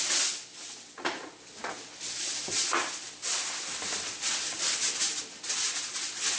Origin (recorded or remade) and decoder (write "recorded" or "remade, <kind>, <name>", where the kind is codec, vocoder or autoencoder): recorded